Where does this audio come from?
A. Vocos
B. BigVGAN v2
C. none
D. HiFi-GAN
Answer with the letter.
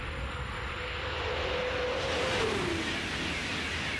C